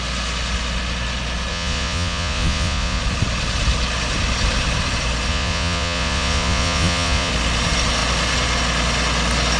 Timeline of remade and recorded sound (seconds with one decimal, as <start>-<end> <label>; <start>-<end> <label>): 0.0-1.5 recorded; 1.5-3.0 remade; 3.0-5.3 recorded; 5.3-7.3 remade; 7.3-9.6 recorded